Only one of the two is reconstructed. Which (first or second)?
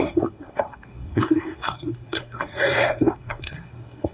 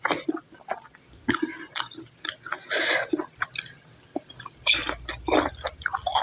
first